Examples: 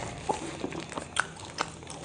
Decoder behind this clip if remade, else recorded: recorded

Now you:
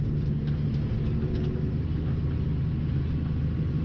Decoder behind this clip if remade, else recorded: recorded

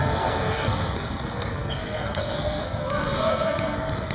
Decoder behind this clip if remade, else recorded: remade, codec, SNAC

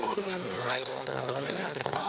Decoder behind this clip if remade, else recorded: remade, codec, SNAC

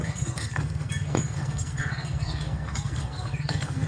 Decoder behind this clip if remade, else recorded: remade, codec, SNAC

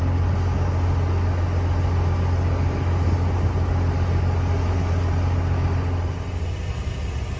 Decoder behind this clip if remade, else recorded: recorded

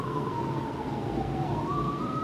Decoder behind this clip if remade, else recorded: remade, codec, SNAC